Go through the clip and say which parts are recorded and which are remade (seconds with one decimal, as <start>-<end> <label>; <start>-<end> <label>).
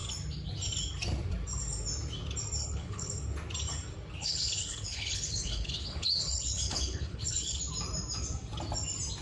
0.0-2.6 recorded; 2.6-3.1 remade; 3.1-4.2 recorded; 4.2-7.6 remade; 7.6-9.2 recorded